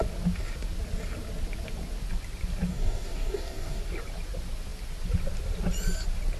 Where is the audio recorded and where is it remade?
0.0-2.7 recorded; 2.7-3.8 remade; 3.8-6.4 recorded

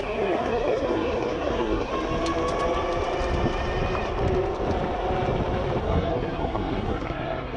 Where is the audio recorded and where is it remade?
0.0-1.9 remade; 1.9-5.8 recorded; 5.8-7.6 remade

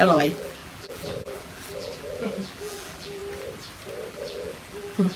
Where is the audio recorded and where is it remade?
0.0-3.2 remade; 3.2-4.1 recorded; 4.1-5.2 remade

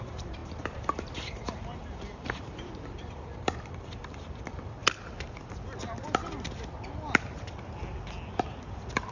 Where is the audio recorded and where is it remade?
0.0-4.8 remade; 4.8-9.1 recorded

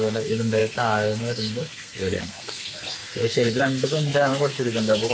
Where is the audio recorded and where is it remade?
0.0-5.1 remade

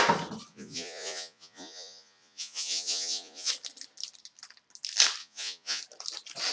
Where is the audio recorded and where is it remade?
0.0-0.5 recorded; 0.5-3.5 remade; 3.5-5.2 recorded; 5.2-5.8 remade; 5.8-6.5 recorded